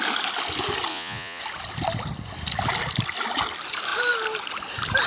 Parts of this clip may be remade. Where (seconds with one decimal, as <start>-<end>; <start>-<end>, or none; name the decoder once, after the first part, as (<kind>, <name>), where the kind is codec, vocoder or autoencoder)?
0.9-1.4 (vocoder, Vocos)